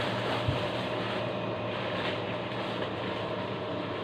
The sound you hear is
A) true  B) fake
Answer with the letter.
B